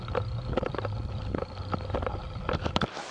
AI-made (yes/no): no